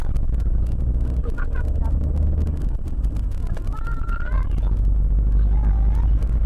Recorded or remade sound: recorded